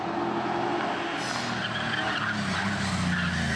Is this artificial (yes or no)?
no